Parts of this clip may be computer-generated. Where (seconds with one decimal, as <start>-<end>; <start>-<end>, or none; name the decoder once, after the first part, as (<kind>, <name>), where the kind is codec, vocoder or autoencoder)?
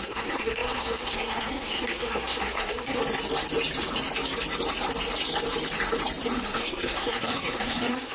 0.0-3.0 (codec, SNAC); 6.4-8.1